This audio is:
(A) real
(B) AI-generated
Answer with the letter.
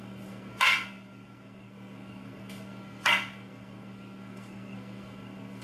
B